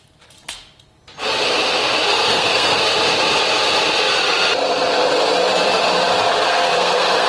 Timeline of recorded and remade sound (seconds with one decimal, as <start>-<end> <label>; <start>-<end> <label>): 0.0-2.1 recorded; 2.1-2.8 remade; 2.8-6.5 recorded; 6.5-7.3 remade